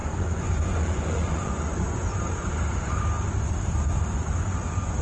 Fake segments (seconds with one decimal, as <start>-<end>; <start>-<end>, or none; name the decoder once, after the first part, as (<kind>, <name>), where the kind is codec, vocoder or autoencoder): 0.0-3.0 (vocoder, Vocos); 4.1-5.0